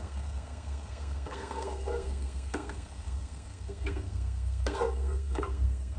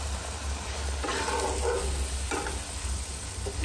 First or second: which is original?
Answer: second